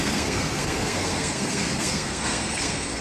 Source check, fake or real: fake